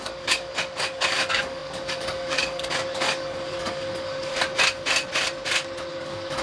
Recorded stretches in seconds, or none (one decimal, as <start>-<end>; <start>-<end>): 4.3-5.9